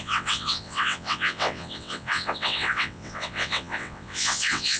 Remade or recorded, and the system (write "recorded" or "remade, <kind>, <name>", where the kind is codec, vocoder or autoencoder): remade, vocoder, WaveNeXt